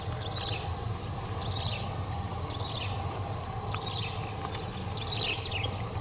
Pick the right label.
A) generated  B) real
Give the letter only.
B